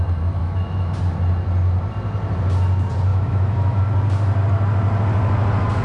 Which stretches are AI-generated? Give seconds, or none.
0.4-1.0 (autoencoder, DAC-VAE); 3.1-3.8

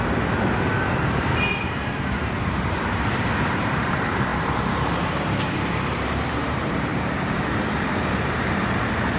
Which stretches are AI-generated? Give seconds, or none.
0.0-4.3 (vocoder, BigVGAN v2); 4.9-9.2

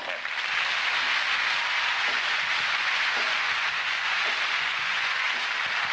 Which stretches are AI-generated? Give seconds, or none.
1.9-5.4 (vocoder, Vocos)

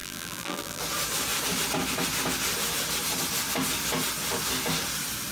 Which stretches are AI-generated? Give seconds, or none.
0.0-0.8 (vocoder, BigVGAN v2)